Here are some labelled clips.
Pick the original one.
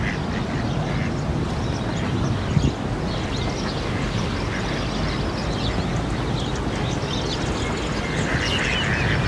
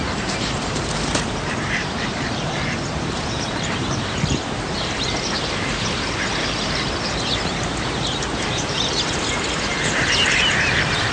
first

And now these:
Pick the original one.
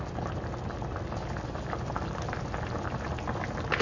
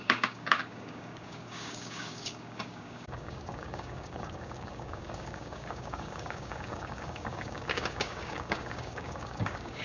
first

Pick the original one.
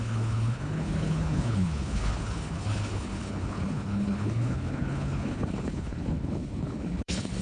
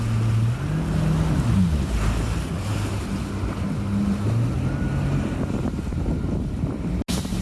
second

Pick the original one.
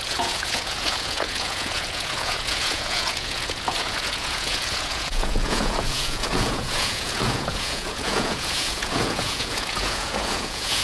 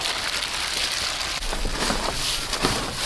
second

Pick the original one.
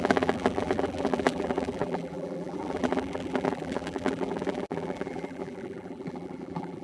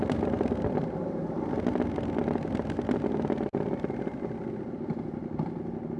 second